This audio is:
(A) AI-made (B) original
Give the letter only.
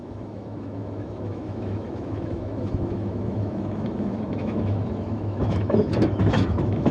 A